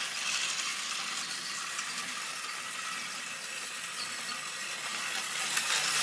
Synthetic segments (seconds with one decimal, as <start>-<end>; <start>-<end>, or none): none